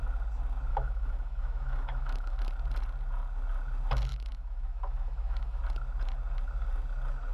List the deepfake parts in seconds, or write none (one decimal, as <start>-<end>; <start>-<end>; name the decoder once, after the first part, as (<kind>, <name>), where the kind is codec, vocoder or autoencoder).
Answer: 0.7-2.4 (autoencoder, DAC-VAE); 4.1-5.6